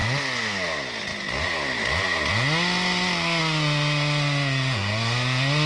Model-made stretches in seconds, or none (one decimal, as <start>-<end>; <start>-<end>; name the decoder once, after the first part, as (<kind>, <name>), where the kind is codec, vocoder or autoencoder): none